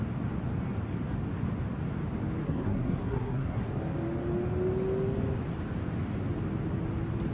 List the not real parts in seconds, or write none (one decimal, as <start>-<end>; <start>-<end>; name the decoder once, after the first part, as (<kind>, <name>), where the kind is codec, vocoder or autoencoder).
2.4-3.7 (codec, SNAC)